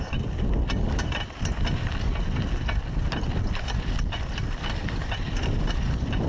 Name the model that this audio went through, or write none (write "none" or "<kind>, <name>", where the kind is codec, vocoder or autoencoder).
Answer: vocoder, BigVGAN v2